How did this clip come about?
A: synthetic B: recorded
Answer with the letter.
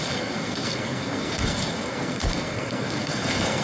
A